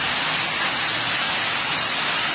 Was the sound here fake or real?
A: real